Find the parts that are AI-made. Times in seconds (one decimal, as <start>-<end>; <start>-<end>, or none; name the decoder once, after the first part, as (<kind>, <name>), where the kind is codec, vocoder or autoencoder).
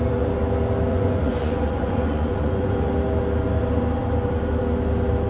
0.9-2.9 (vocoder, Vocos)